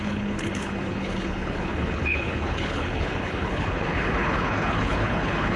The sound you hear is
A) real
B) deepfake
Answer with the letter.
B